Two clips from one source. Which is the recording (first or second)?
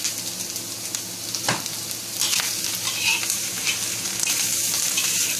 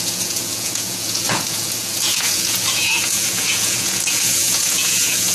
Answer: first